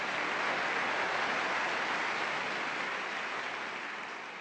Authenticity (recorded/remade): recorded